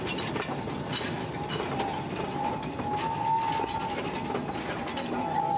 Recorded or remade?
recorded